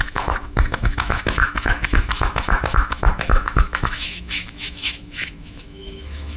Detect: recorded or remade remade